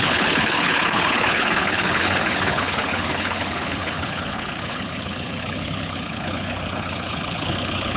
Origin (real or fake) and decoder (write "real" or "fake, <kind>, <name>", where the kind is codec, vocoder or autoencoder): fake, codec, HILCodec